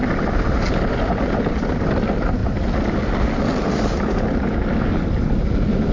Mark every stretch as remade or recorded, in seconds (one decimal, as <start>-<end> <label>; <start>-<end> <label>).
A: 0.0-5.9 recorded